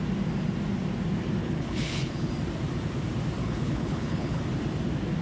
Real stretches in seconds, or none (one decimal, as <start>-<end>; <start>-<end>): 0.0-1.4; 2.3-3.4; 4.4-5.2